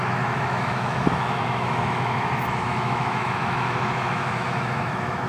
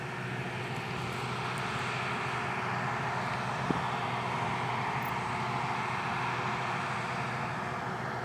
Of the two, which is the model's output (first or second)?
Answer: first